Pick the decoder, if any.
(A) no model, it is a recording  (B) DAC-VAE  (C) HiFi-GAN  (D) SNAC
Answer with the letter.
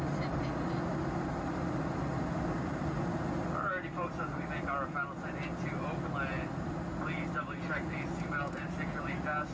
A